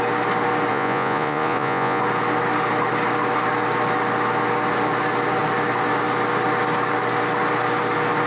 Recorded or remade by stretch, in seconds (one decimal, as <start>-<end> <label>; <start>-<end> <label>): 0.0-0.7 recorded; 0.7-2.0 remade; 2.0-8.3 recorded